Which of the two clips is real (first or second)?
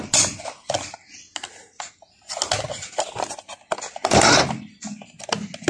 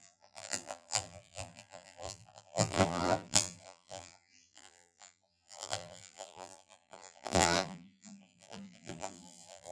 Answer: first